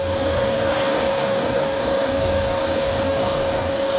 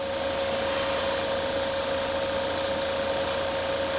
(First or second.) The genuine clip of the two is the second